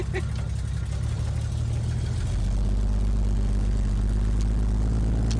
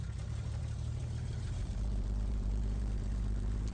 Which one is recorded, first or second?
first